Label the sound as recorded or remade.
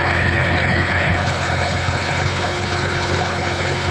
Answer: remade